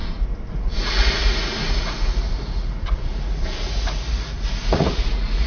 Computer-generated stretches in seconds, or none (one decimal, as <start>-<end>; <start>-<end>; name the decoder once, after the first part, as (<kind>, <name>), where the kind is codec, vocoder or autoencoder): 0.5-5.5 (vocoder, Vocos)